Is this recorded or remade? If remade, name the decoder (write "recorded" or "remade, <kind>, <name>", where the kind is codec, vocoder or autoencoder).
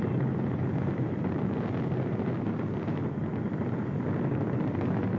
recorded